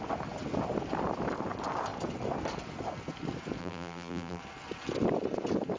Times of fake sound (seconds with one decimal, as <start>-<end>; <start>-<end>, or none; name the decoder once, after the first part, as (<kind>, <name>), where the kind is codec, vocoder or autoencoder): 3.6-4.4 (vocoder, BigVGAN v2)